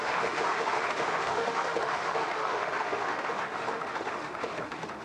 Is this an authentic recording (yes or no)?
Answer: no